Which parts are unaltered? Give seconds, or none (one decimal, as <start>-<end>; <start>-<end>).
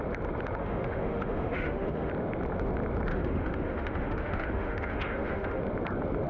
0.0-0.6; 2.1-3.1; 5.6-6.3